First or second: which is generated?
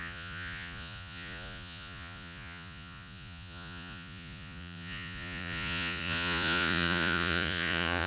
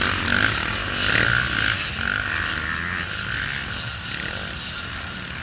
first